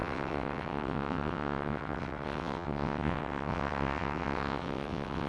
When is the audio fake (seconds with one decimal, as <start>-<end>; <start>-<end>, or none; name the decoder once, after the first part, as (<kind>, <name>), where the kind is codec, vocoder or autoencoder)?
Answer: 0.0-5.3 (vocoder, WaveNeXt)